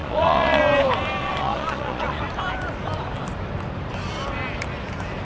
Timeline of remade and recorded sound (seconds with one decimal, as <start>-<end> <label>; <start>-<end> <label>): 0.0-0.6 remade; 0.6-1.2 recorded; 1.2-2.2 remade; 2.2-5.2 recorded